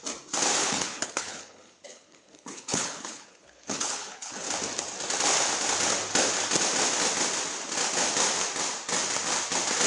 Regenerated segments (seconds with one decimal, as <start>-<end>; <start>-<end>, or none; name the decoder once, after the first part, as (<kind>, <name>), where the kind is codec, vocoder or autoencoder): 0.6-4.5 (codec, HILCodec)